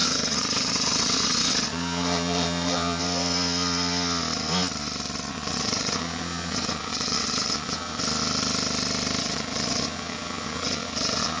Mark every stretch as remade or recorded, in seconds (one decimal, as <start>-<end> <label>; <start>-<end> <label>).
0.0-3.0 remade; 3.0-5.3 recorded; 5.3-8.0 remade; 8.0-9.2 recorded; 9.2-11.4 remade